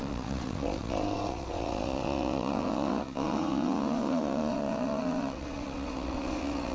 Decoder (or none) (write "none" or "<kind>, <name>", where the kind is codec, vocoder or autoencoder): vocoder, WaveNeXt